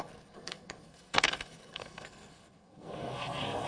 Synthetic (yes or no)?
yes